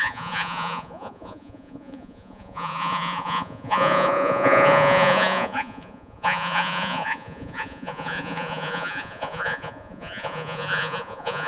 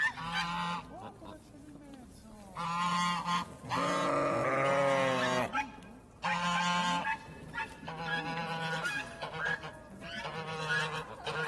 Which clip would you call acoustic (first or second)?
second